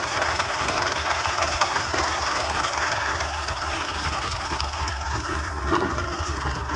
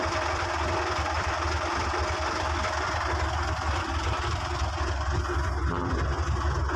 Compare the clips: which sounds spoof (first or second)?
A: first